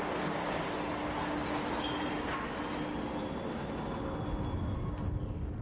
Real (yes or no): yes